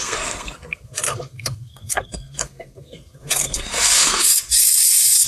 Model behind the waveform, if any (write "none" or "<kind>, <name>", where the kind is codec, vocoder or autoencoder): codec, SNAC